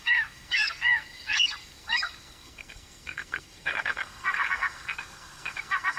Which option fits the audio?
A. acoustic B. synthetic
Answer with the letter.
B